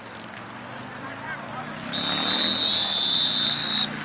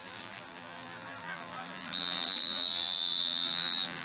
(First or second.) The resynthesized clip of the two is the second